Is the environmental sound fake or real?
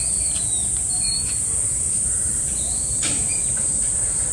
fake